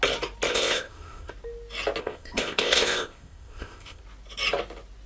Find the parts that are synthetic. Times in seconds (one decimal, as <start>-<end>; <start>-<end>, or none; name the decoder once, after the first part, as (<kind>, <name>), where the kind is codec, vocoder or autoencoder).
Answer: 0.5-1.3 (codec, ZipCodec); 2.0-4.0